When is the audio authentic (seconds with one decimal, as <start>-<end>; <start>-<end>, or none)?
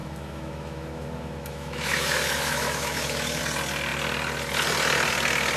3.4-5.6